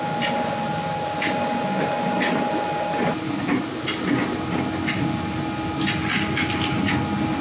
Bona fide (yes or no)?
yes